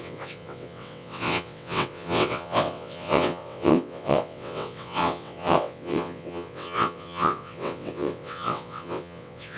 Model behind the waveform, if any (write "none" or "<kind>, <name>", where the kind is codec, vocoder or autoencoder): vocoder, WaveNeXt